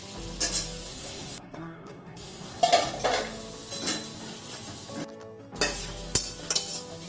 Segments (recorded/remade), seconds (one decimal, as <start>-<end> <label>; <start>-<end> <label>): 0.0-0.9 recorded; 0.9-2.6 remade; 2.6-7.1 recorded